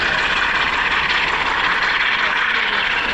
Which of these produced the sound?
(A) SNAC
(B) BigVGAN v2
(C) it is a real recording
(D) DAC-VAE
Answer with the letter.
C